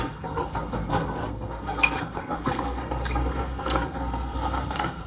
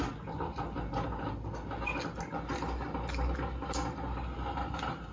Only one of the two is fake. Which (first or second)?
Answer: first